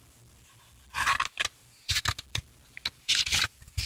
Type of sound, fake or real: real